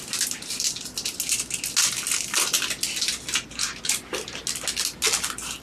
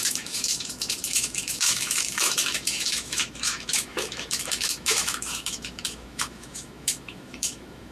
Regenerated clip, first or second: second